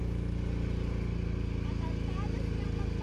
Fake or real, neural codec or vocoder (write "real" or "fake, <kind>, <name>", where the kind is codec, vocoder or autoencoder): real